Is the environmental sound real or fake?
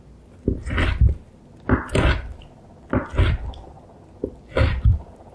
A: real